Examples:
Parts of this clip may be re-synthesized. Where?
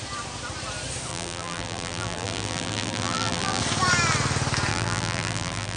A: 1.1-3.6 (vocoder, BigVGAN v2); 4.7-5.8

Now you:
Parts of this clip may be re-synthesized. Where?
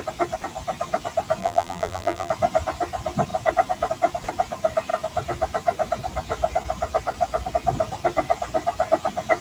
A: 1.4-2.3 (vocoder, BigVGAN v2)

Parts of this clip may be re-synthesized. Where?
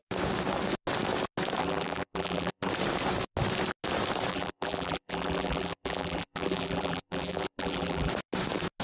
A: 1.6-2.7 (vocoder, BigVGAN v2); 4.3-8.1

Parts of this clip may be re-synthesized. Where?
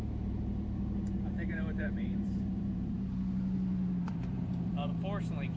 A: 0.0-3.1 (vocoder, BigVGAN v2); 4.0-4.9